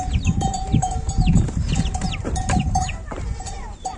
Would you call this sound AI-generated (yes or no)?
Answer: yes